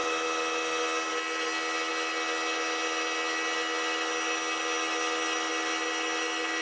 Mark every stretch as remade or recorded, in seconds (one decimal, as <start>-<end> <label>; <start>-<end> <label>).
0.0-6.6 recorded